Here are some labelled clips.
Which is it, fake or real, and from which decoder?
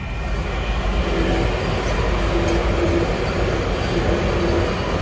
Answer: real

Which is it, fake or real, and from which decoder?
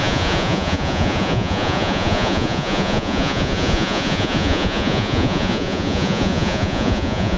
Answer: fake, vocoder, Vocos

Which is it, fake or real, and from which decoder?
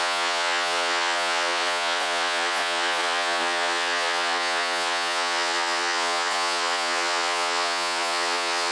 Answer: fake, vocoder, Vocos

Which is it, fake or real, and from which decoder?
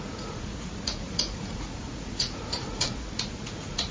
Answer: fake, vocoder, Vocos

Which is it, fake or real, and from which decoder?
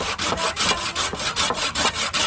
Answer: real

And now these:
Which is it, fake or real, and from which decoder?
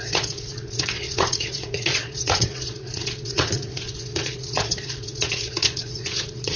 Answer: fake, vocoder, Vocos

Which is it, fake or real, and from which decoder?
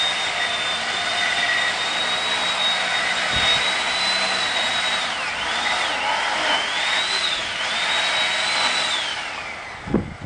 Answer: real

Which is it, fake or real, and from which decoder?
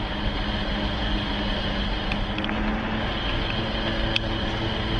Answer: real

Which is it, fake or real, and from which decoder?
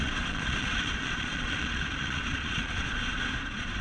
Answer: fake, vocoder, Vocos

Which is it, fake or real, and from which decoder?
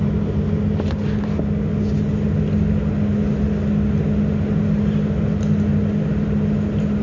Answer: real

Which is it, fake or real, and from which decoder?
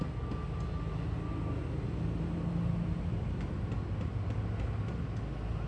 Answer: real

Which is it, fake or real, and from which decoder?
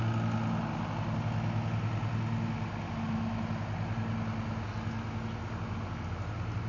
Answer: real